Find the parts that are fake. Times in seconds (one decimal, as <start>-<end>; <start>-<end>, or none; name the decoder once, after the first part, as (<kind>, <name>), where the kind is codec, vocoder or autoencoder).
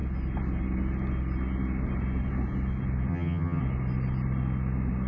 3.1-3.6 (vocoder, HiFi-GAN)